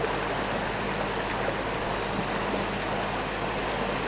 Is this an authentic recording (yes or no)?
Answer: yes